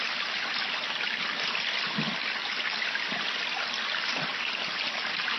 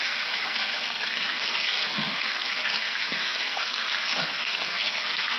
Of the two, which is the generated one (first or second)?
second